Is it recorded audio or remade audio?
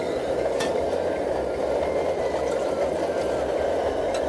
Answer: remade